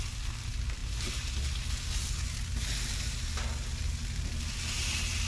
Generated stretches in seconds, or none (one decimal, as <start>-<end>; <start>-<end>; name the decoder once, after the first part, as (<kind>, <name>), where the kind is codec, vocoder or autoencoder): none